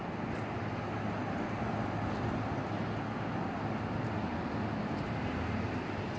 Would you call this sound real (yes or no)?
yes